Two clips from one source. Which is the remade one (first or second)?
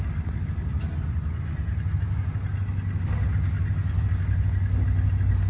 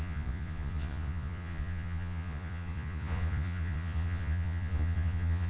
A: second